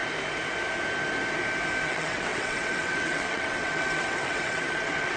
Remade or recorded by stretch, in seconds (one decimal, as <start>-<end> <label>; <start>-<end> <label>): 0.0-1.8 recorded; 1.8-5.2 remade